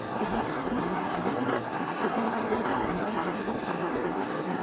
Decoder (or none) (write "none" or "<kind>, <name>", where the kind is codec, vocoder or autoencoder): codec, SNAC